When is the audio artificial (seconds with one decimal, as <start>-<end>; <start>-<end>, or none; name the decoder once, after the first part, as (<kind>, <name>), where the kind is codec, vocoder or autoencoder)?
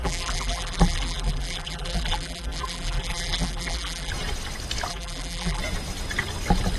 0.0-4.1 (vocoder, BigVGAN v2); 4.9-5.6